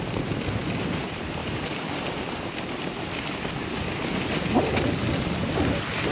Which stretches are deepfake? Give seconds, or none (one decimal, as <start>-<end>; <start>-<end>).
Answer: 1.4-1.9

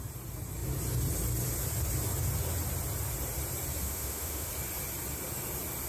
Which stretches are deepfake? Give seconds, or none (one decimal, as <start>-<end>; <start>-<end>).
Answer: 3.8-4.5

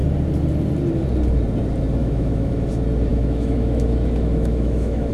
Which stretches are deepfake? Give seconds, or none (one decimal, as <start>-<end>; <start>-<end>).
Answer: 2.0-2.7; 3.1-5.1

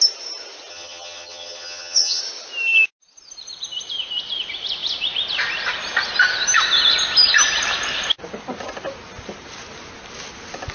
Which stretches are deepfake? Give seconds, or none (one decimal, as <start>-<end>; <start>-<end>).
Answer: 0.7-2.2

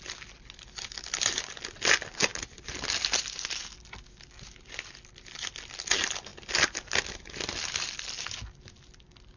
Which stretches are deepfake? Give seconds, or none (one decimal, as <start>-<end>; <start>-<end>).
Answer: none

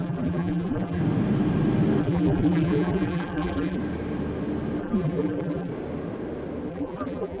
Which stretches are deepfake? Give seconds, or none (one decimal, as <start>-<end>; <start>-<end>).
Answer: 0.0-1.0; 2.0-3.8; 4.8-5.7; 6.7-7.4